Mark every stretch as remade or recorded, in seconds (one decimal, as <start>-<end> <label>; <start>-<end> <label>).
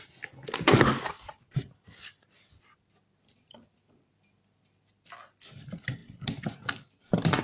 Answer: 0.0-7.4 recorded